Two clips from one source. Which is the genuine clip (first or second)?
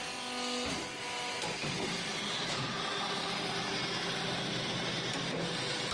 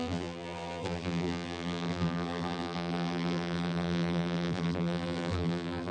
first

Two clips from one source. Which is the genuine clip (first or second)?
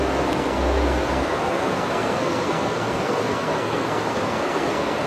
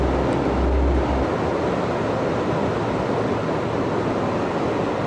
second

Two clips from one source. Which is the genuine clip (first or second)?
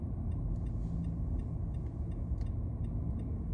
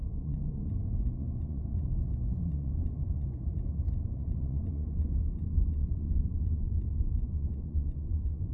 first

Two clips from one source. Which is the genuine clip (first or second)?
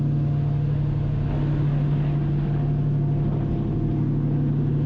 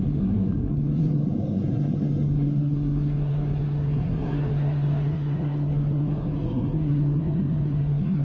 first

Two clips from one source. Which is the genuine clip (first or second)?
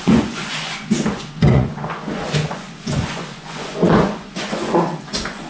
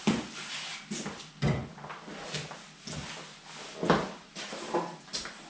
second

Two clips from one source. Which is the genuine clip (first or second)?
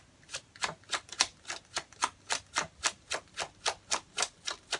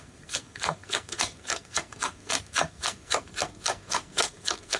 first